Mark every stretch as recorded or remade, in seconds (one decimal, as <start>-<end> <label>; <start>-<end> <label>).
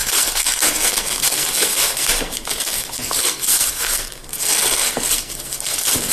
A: 0.0-6.1 remade